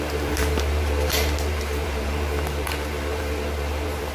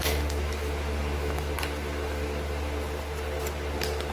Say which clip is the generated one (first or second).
first